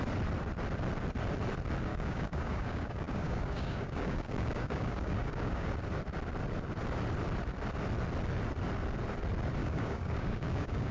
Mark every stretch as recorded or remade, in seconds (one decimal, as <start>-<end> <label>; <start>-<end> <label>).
0.0-1.9 recorded; 1.9-5.7 remade; 5.7-9.6 recorded; 9.6-10.9 remade